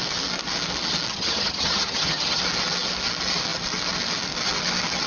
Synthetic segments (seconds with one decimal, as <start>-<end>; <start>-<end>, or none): 1.1-2.4